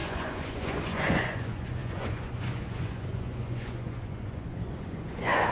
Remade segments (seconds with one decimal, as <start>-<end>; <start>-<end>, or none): 0.0-5.5